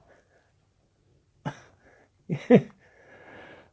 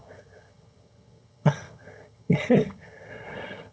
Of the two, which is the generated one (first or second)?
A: second